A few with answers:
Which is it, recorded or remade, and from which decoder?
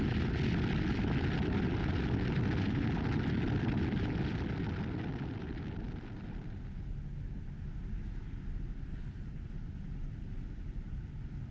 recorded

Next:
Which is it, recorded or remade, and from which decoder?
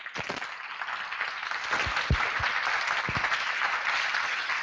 recorded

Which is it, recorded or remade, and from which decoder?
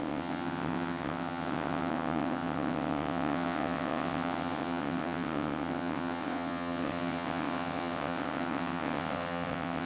remade, vocoder, WaveNeXt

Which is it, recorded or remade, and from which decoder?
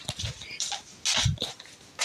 recorded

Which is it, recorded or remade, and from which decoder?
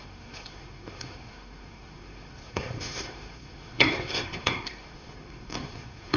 remade, codec, SNAC